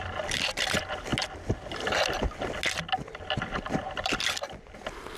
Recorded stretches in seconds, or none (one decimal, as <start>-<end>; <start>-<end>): 0.0-3.0; 4.1-5.2